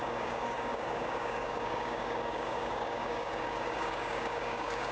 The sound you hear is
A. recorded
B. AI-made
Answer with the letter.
B